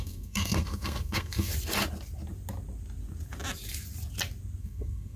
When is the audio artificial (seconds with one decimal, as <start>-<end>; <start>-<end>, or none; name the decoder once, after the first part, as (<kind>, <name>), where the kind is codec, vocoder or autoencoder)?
0.0-1.5 (codec, SNAC); 4.6-5.2